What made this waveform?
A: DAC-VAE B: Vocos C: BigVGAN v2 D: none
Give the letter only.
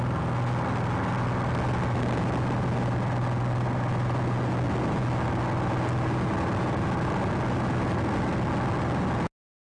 D